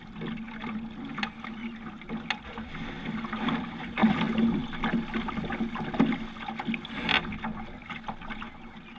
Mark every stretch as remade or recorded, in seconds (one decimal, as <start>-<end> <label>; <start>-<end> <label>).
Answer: 0.0-9.0 recorded